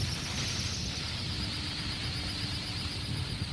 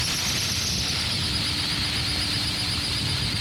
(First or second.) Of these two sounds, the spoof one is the first